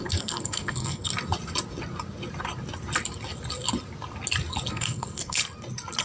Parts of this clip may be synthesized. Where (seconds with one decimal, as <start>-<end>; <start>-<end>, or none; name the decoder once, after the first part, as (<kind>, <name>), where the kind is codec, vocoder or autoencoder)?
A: 0.0-1.1 (codec, SNAC); 4.7-5.4